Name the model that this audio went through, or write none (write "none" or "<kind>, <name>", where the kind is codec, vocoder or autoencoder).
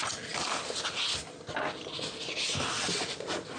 none